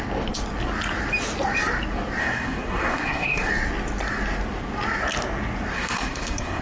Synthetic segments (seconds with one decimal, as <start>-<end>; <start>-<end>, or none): 2.2-3.5; 5.7-6.6